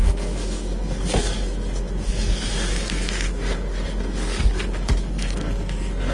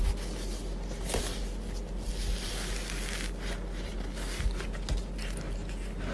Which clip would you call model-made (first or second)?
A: first